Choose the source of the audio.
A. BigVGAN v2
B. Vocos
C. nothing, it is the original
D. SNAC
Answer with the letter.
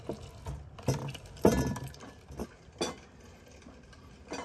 C